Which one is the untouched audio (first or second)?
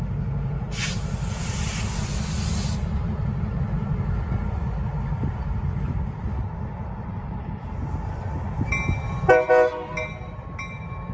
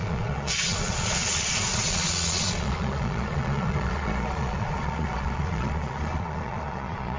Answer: first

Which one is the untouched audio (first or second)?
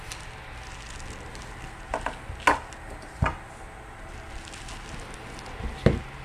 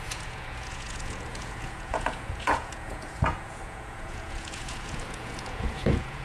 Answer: first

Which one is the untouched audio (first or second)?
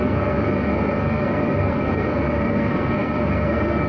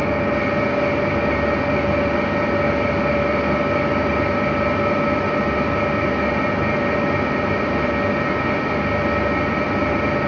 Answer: second